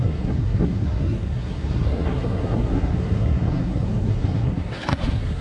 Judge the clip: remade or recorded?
remade